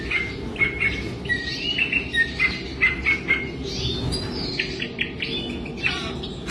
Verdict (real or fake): real